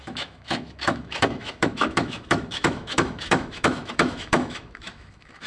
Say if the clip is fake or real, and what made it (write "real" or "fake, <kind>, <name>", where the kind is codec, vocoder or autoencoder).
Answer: fake, autoencoder, DAC-VAE